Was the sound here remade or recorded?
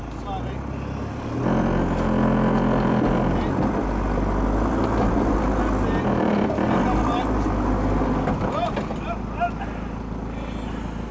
recorded